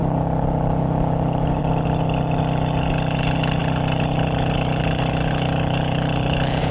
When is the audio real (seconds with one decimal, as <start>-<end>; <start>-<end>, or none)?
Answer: 0.0-6.7